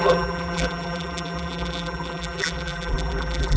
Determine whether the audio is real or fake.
fake